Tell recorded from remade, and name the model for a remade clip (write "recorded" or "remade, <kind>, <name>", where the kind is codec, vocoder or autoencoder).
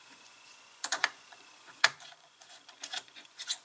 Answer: remade, vocoder, Vocos